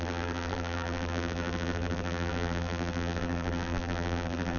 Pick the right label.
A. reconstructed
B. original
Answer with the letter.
A